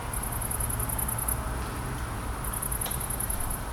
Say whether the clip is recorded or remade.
recorded